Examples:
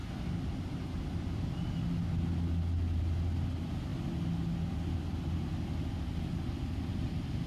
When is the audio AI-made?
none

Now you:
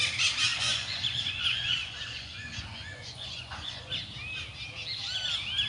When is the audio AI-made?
0.5-3.9 (vocoder, Vocos)

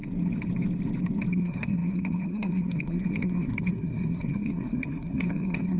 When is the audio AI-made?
1.3-5.8 (codec, SNAC)

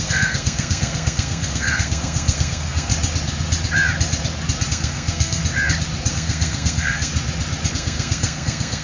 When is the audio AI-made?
0.0-2.9 (codec, SNAC); 4.7-5.4; 6.1-7.1; 7.7-8.8

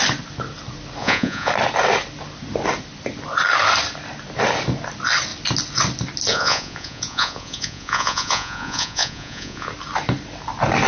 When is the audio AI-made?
1.0-1.5 (vocoder, Vocos); 6.3-9.7